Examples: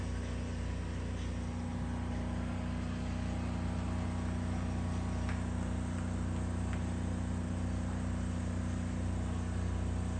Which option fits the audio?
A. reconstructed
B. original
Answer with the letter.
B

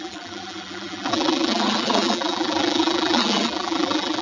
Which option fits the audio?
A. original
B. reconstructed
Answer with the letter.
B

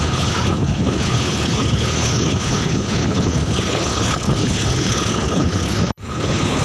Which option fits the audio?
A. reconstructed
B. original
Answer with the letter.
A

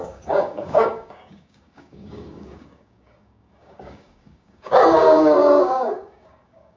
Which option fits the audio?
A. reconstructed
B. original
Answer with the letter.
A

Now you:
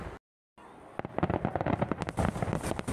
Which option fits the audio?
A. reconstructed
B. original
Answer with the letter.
B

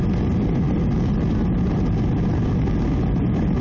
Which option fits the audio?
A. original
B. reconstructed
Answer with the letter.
A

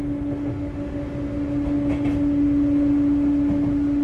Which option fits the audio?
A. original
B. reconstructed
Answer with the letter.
A